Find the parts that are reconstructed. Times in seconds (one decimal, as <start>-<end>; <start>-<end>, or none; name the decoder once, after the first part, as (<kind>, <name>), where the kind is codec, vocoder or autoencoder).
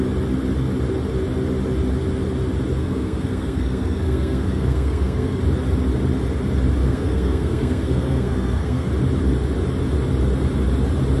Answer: 2.8-5.4 (codec, SNAC); 6.8-8.9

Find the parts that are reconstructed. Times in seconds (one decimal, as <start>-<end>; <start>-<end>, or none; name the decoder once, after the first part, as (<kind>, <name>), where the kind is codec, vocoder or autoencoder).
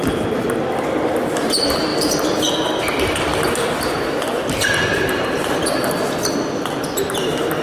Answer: 1.9-2.5 (vocoder, BigVGAN v2); 4.9-5.6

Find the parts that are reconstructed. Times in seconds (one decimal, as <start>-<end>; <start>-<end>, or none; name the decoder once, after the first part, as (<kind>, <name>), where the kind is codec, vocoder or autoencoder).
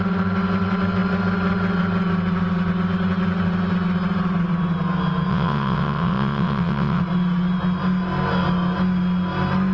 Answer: 5.3-7.0 (vocoder, WaveNeXt)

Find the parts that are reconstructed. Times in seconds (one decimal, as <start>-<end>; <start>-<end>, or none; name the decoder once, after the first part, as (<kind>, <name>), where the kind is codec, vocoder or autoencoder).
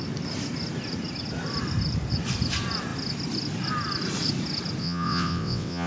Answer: 4.8-5.9 (vocoder, WaveNeXt)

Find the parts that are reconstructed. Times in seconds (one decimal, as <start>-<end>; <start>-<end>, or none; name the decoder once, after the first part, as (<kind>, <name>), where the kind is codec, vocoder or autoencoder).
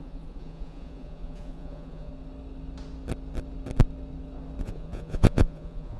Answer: 0.0-2.1 (vocoder, Vocos); 4.6-6.0